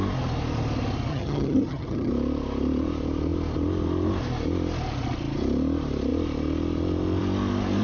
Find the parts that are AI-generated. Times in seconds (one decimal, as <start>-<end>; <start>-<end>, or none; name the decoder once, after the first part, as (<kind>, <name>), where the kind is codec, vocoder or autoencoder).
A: 1.1-2.1 (vocoder, HiFi-GAN)